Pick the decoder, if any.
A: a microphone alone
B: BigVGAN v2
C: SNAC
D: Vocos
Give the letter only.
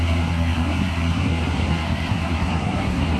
C